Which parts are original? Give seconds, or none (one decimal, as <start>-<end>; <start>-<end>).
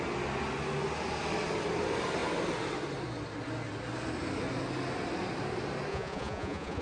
0.0-5.9